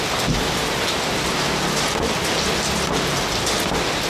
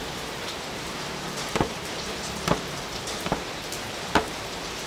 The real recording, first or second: first